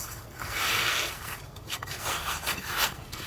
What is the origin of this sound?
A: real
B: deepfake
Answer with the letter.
B